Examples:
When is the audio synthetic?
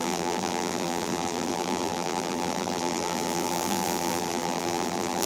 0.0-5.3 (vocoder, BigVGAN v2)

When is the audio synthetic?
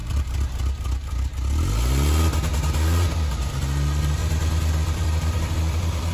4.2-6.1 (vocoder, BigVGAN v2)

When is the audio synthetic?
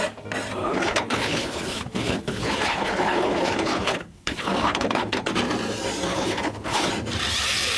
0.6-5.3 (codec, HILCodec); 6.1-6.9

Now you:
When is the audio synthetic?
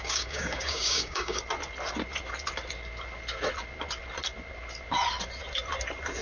0.0-1.4 (codec, DAC)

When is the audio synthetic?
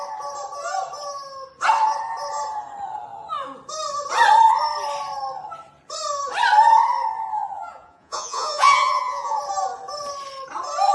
7.4-9.4 (vocoder, Vocos)